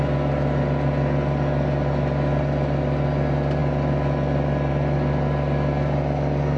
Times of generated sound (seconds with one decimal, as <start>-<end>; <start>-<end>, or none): none